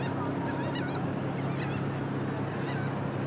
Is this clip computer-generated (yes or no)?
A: no